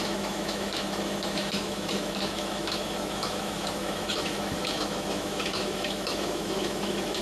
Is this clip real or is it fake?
fake